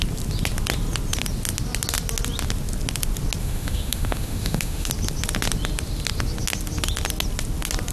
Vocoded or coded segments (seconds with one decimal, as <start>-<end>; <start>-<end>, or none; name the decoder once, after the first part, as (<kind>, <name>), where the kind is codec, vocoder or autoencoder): 3.4-4.9 (autoencoder, DAC-VAE)